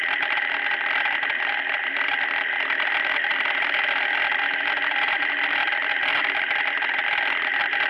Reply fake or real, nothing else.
fake